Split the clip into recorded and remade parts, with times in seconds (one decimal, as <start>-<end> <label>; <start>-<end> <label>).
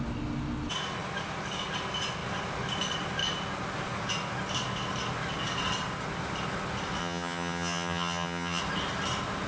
0.0-7.0 recorded; 7.0-8.6 remade; 8.6-9.5 recorded